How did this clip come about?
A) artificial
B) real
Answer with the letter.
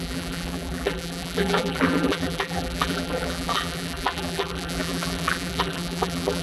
A